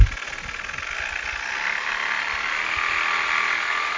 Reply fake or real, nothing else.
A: real